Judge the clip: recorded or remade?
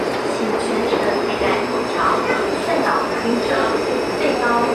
remade